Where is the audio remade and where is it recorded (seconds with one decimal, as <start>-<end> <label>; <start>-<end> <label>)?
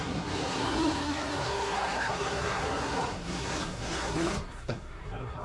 0.0-5.4 remade